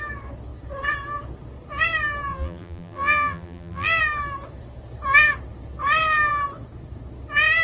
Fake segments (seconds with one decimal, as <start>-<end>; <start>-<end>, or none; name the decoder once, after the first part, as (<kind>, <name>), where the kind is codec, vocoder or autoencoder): 2.3-4.0 (vocoder, BigVGAN v2)